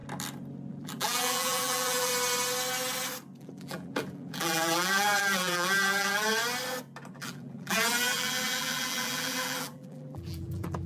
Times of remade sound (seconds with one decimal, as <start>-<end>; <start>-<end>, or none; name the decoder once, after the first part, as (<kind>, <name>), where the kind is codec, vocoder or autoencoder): 0.7-2.1 (vocoder, BigVGAN v2); 3.4-6.4; 7.1-10.9